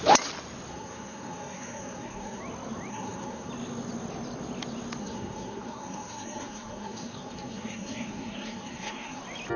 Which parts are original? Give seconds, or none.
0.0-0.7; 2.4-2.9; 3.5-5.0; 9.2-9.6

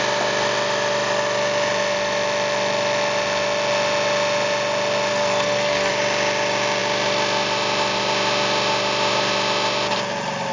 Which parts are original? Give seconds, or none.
0.0-5.1; 5.9-10.5

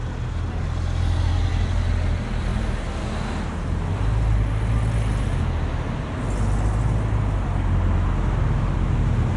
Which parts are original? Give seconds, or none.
0.0-9.4

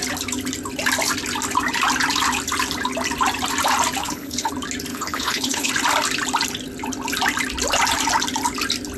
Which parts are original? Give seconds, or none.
0.0-4.0; 4.5-4.9; 5.7-9.0